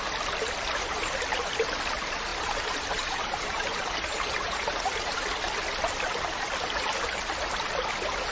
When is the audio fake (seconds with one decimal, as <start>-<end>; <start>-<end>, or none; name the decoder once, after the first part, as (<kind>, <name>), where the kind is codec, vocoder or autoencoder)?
2.3-5.2 (vocoder, BigVGAN v2)